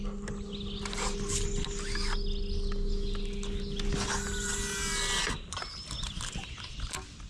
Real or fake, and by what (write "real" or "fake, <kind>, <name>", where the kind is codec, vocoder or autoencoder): real